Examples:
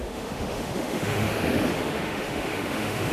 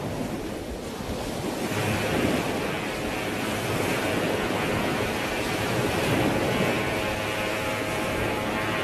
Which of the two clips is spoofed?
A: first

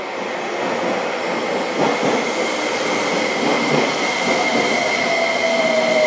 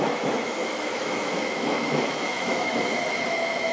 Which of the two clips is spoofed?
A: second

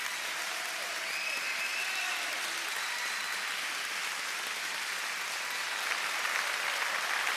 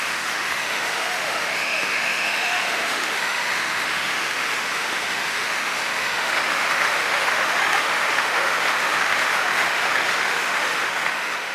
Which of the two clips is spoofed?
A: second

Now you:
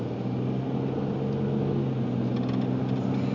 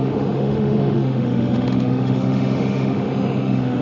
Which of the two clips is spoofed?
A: second